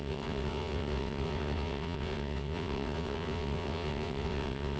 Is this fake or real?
fake